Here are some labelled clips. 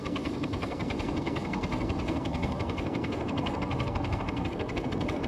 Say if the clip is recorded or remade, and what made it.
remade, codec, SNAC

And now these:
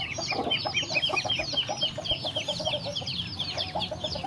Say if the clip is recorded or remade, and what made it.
remade, vocoder, BigVGAN v2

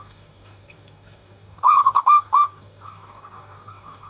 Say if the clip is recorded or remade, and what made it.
remade, codec, DAC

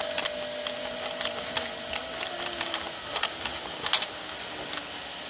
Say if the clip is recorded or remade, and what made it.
recorded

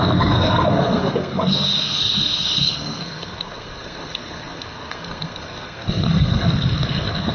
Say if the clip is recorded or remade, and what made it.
remade, codec, SNAC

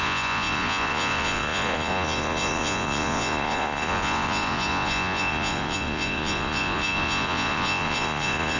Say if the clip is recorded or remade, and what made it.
remade, vocoder, Vocos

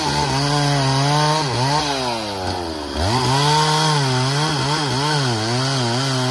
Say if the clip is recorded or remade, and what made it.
recorded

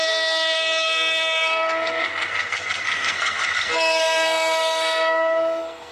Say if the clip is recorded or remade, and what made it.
remade, codec, SNAC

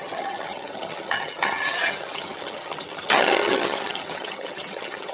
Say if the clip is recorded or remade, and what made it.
remade, vocoder, HiFi-GAN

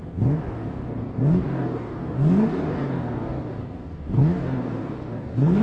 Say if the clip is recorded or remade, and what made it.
remade, codec, DAC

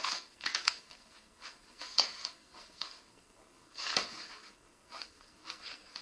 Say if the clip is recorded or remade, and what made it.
remade, codec, SNAC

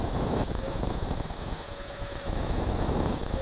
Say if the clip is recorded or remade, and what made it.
remade, autoencoder, DAC-VAE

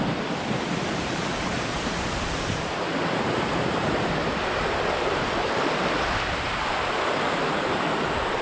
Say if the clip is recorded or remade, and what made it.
remade, vocoder, BigVGAN v2